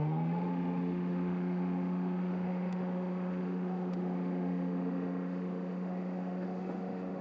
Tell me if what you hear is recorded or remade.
remade